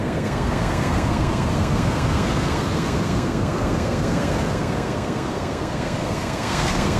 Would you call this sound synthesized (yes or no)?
yes